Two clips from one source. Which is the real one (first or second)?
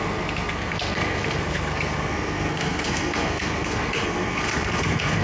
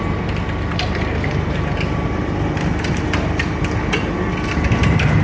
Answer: second